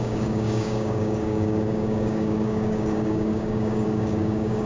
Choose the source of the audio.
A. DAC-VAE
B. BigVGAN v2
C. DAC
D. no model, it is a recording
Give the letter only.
C